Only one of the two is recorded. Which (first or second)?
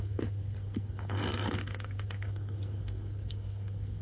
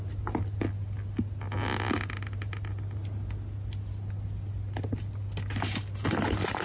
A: second